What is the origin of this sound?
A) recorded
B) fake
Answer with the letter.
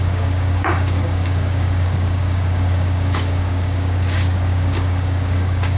B